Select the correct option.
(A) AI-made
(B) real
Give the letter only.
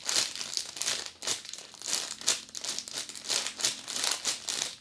B